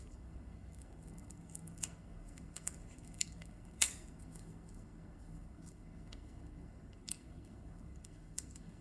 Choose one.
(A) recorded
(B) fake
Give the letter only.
B